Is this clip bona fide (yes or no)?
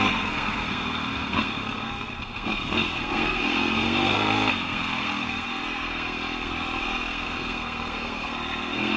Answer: no